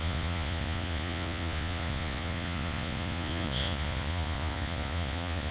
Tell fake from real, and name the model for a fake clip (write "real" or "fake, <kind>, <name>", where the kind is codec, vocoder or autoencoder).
fake, vocoder, Vocos